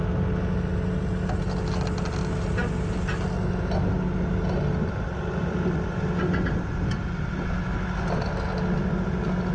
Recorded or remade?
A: recorded